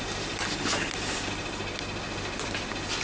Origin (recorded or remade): recorded